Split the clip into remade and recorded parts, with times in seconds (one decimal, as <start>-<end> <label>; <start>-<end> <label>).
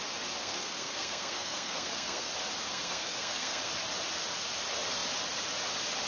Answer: 0.0-0.4 recorded; 0.4-2.3 remade; 2.3-2.7 recorded; 2.7-3.7 remade; 3.7-6.1 recorded